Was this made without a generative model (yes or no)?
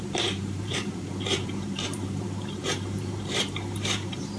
no